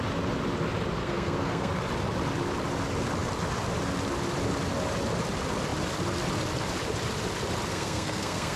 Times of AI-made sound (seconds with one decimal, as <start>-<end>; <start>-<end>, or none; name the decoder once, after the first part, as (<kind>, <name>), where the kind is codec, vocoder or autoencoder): 1.0-1.7 (codec, SNAC); 7.7-8.6